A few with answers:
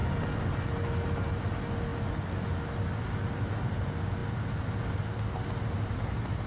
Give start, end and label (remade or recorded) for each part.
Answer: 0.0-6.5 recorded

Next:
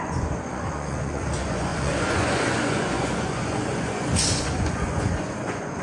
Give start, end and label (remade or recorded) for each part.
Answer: 0.0-5.8 remade

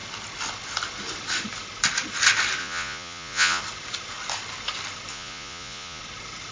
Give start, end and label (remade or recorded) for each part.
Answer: 0.0-2.6 recorded; 2.6-3.6 remade; 3.6-5.1 recorded; 5.1-6.0 remade; 6.0-6.5 recorded

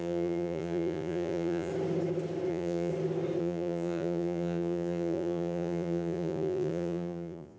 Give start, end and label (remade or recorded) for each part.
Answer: 0.0-1.7 remade; 1.7-2.5 recorded; 2.5-2.9 remade; 2.9-3.4 recorded; 3.4-7.6 remade

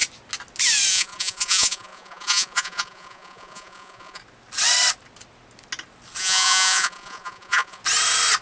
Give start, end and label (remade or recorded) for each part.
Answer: 0.0-0.9 recorded; 0.9-4.2 remade; 4.2-6.2 recorded; 6.2-7.8 remade; 7.8-8.4 recorded